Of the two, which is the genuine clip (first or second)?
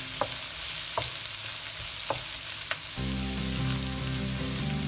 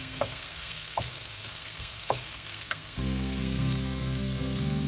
first